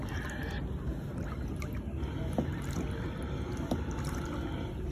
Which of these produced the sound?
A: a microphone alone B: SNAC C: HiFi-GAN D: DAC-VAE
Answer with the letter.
A